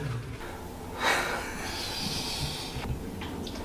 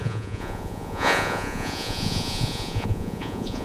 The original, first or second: first